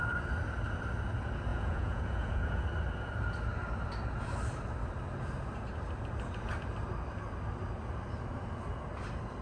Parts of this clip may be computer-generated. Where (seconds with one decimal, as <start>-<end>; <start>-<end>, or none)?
1.5-2.6